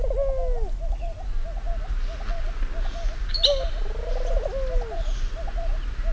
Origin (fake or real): real